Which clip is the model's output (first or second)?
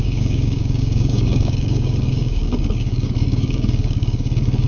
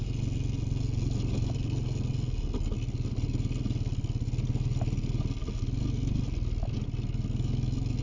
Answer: first